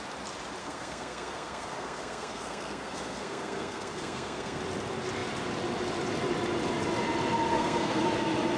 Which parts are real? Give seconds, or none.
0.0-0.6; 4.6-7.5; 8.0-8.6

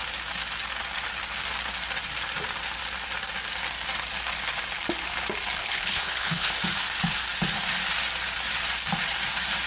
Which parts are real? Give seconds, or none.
0.0-5.6; 6.5-9.7

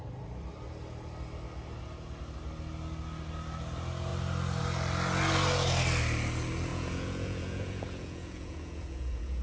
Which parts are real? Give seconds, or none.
0.0-6.7

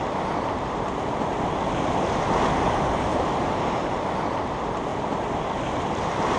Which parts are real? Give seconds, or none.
0.0-3.1; 4.2-6.4